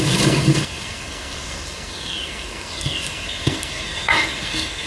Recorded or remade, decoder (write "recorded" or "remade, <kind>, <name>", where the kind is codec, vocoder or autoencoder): remade, codec, SNAC